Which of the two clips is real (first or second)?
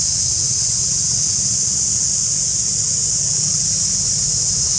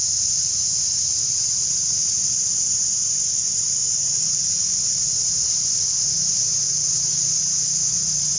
first